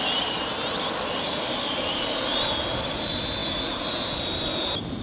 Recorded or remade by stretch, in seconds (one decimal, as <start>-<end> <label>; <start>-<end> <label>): 0.0-5.0 recorded